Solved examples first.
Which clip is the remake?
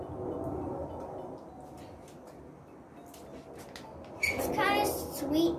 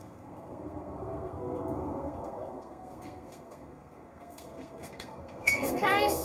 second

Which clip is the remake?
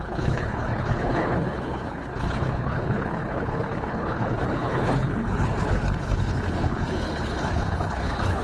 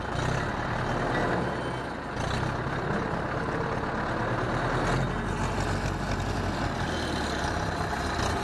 first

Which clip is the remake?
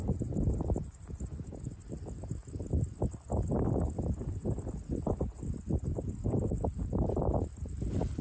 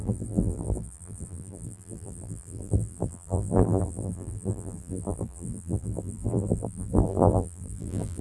second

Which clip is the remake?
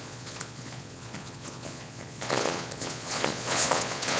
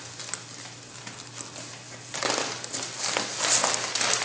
first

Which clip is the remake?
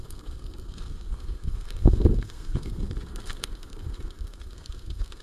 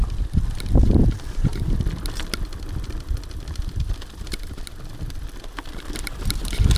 first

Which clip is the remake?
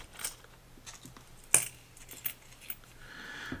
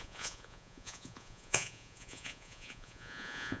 second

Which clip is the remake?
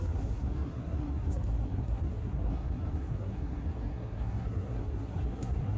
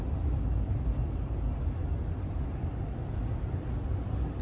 first